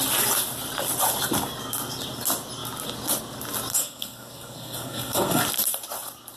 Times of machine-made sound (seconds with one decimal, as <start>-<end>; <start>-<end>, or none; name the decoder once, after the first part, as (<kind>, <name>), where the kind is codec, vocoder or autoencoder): 3.7-5.4 (codec, SNAC)